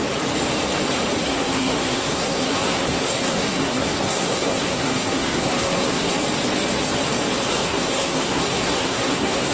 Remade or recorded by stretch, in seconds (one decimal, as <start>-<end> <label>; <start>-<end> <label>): 0.0-1.2 recorded; 1.2-6.2 remade; 6.2-7.5 recorded; 7.5-9.5 remade